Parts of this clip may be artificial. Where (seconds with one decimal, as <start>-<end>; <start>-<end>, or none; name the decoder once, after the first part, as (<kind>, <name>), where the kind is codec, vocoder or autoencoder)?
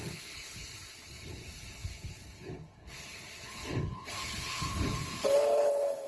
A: 0.0-6.1 (codec, HILCodec)